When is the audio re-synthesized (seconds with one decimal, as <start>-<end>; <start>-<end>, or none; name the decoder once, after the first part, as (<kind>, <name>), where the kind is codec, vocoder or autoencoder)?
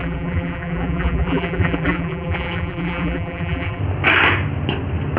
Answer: 0.0-3.8 (vocoder, BigVGAN v2)